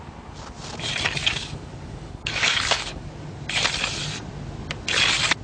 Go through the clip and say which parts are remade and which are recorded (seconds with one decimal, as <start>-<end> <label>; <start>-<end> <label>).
0.0-1.2 recorded; 1.2-3.1 remade; 3.1-5.4 recorded